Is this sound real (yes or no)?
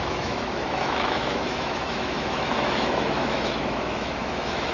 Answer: no